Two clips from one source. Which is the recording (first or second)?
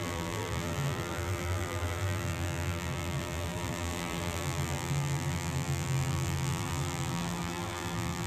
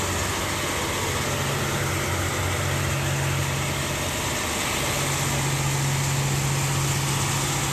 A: second